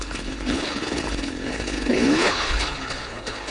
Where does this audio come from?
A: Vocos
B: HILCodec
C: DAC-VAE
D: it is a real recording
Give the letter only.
B